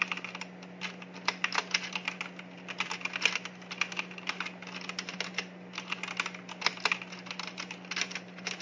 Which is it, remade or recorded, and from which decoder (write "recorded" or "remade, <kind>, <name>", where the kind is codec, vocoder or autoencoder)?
recorded